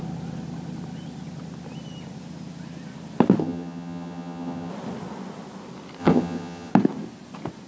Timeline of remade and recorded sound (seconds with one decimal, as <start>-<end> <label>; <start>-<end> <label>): 0.0-3.4 recorded; 3.4-4.7 remade; 4.7-6.0 recorded; 6.0-6.7 remade; 6.7-7.7 recorded